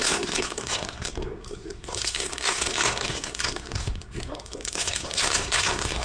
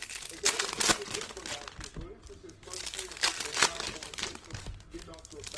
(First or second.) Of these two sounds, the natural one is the second